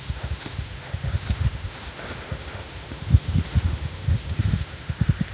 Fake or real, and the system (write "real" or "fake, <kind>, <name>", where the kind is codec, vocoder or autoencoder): fake, autoencoder, DAC-VAE